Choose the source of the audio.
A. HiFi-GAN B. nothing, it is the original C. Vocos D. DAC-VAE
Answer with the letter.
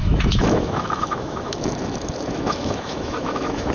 D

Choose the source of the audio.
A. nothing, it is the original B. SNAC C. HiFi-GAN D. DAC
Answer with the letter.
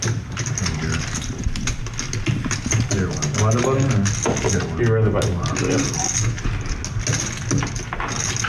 A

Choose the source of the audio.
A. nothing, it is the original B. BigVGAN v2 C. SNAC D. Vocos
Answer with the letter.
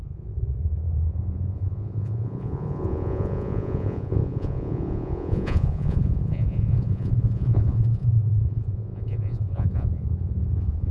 D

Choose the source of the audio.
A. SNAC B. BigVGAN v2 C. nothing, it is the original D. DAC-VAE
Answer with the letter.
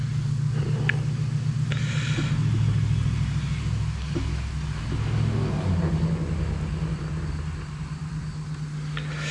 C